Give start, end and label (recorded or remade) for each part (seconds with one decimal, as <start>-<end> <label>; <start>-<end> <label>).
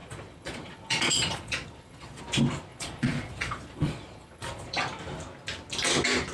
0.0-2.2 remade; 2.2-2.7 recorded; 2.7-4.8 remade; 4.8-6.3 recorded